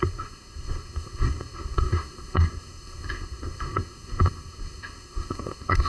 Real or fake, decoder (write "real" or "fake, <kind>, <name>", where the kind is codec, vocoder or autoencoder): fake, codec, SNAC